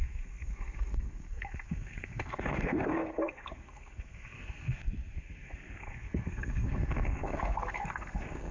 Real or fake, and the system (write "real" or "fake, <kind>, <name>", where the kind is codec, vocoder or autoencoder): fake, codec, SNAC